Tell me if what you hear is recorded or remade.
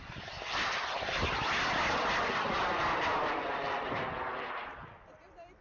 remade